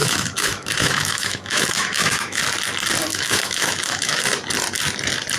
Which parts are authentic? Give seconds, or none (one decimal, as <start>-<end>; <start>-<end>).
2.4-3.1; 4.2-5.4